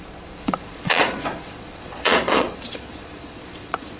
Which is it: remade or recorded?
remade